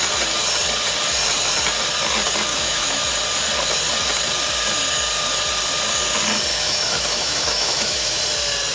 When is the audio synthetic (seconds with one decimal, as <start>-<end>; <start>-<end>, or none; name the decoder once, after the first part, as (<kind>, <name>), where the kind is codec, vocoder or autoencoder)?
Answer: 2.5-3.0 (autoencoder, DAC-VAE); 6.5-8.2